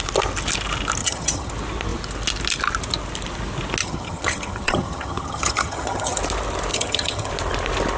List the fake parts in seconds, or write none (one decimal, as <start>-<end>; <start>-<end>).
1.0-1.5; 3.8-6.2; 6.7-7.3